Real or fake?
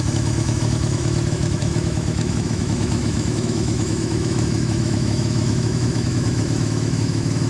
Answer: fake